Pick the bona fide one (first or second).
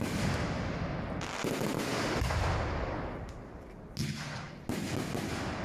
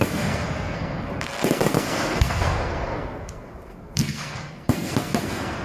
first